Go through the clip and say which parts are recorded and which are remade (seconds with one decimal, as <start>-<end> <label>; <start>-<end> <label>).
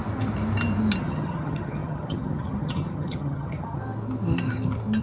0.0-1.0 recorded; 1.0-3.8 remade; 3.8-5.0 recorded